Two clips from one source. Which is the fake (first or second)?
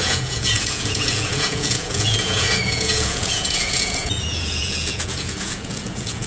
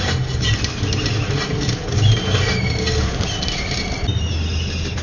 first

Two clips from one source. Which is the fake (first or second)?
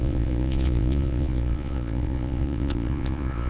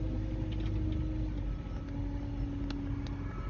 first